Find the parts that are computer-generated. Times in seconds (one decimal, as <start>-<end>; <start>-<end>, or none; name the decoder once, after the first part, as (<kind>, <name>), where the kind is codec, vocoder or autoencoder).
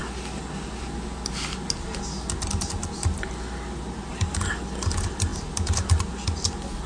none